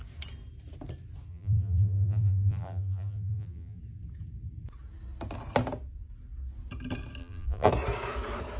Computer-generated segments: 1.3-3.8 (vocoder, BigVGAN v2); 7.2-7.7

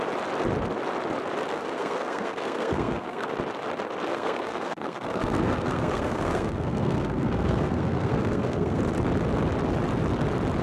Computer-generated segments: 1.5-3.3 (codec, SNAC); 4.1-8.8

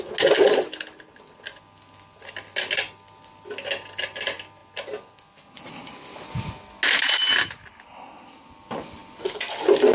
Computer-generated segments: none

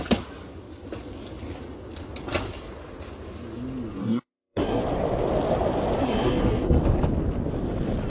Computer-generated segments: 4.0-4.8 (codec, SNAC); 6.0-6.8

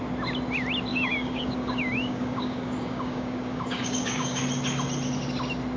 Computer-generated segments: 0.9-4.4 (codec, DAC)

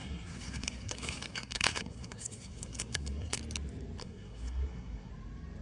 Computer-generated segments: 0.0-3.4 (codec, SNAC); 4.0-5.1

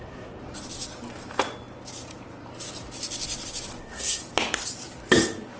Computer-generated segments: 0.0-0.4 (codec, SNAC); 3.8-4.2

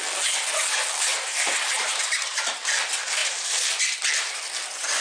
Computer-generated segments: 1.1-2.6 (vocoder, BigVGAN v2); 3.2-3.8